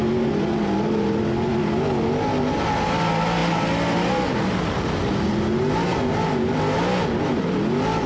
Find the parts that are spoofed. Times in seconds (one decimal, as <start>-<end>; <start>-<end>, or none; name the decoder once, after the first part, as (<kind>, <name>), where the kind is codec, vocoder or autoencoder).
none